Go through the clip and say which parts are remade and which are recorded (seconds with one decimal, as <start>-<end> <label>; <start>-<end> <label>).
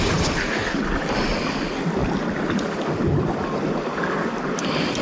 0.0-5.0 recorded